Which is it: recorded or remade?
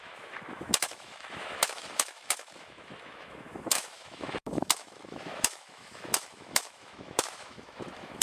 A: remade